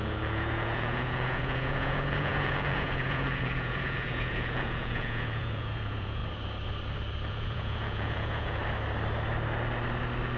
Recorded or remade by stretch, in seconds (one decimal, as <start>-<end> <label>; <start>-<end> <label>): 0.0-6.2 remade; 6.2-7.3 recorded; 7.3-8.6 remade; 8.6-10.4 recorded